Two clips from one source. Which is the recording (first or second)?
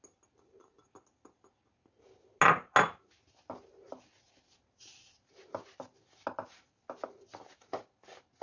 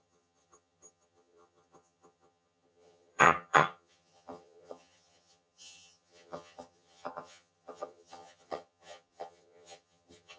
first